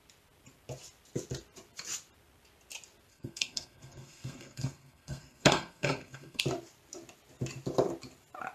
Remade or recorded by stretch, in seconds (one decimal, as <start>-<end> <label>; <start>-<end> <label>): 0.0-3.1 recorded; 3.1-6.4 remade; 6.4-8.5 recorded